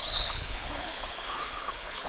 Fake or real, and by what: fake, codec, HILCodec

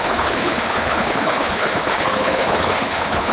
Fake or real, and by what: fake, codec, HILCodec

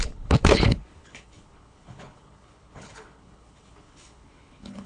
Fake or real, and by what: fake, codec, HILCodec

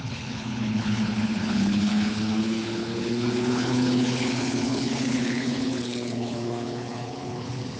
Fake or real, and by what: fake, codec, HILCodec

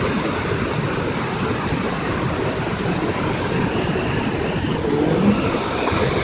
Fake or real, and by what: real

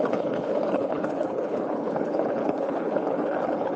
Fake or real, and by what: fake, codec, HILCodec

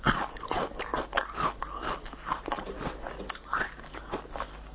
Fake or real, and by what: real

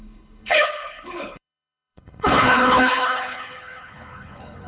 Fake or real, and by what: fake, codec, HILCodec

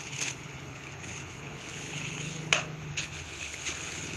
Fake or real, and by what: fake, codec, HILCodec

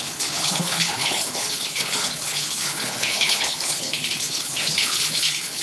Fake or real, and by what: fake, codec, HILCodec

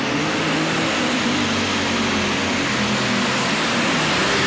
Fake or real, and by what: real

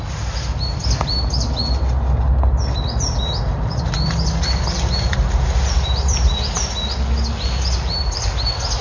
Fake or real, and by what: real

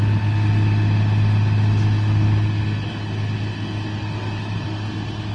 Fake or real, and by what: real